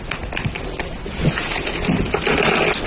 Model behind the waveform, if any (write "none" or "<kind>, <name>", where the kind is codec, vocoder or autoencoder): none